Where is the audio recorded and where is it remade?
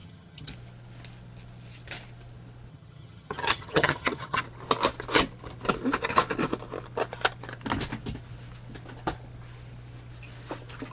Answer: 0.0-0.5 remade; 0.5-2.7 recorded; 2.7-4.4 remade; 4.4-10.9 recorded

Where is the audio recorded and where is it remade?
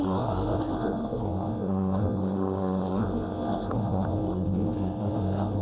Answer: 0.0-5.6 remade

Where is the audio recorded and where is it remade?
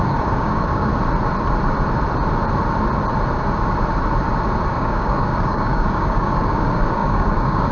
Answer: 0.0-0.9 remade; 0.9-4.7 recorded; 4.7-7.7 remade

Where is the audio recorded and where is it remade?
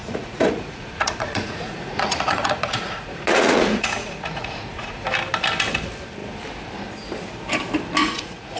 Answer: 0.0-5.0 remade; 5.0-8.0 recorded; 8.0-8.6 remade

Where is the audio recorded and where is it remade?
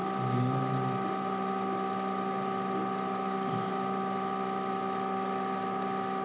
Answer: 0.0-6.2 recorded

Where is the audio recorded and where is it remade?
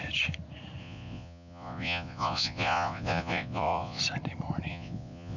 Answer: 0.0-0.8 recorded; 0.8-4.0 remade; 4.0-4.7 recorded; 4.7-5.4 remade